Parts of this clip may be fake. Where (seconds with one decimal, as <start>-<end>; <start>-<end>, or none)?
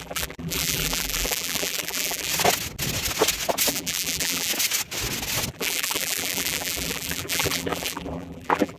0.0-2.3; 3.7-4.5; 5.5-8.8